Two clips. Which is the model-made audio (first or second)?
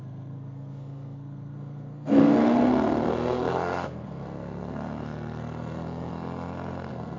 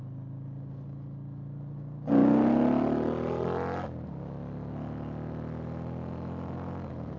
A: first